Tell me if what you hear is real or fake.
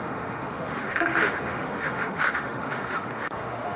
fake